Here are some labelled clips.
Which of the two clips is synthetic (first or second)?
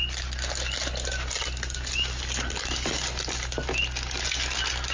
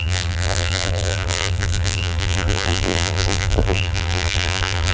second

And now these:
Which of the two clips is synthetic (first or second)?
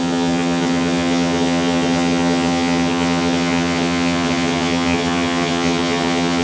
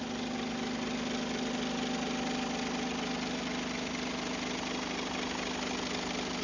first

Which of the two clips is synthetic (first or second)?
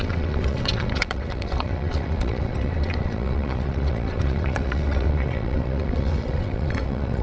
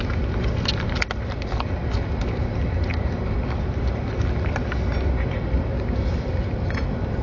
first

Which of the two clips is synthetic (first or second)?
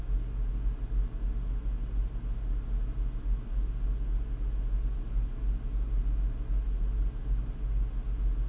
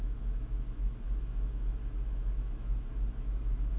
second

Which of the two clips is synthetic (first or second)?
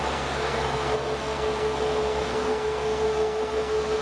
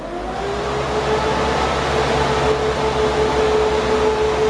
first